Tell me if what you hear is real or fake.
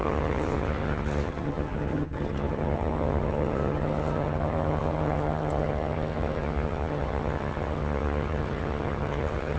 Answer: fake